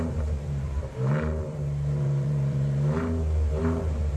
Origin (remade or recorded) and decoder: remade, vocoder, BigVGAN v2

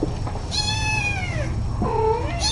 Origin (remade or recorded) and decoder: recorded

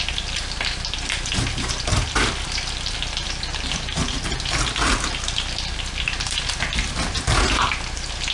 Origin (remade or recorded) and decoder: recorded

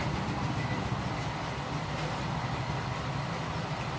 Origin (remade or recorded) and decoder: recorded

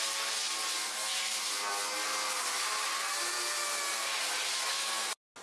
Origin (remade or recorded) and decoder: recorded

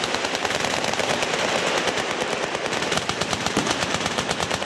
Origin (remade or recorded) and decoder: remade, vocoder, BigVGAN v2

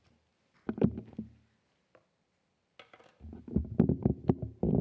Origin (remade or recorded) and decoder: recorded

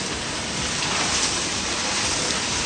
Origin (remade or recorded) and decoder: recorded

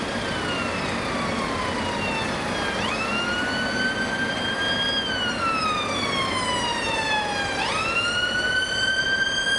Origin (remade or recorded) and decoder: recorded